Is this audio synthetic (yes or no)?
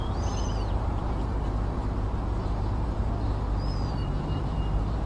yes